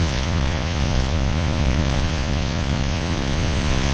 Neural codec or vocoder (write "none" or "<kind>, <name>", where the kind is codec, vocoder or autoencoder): vocoder, Vocos